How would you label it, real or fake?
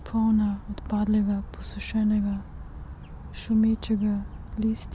real